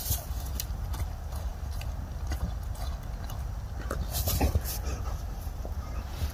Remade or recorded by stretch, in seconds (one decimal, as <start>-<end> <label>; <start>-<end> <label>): 0.0-4.9 recorded; 4.9-6.3 remade